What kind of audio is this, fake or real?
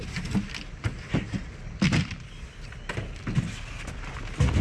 real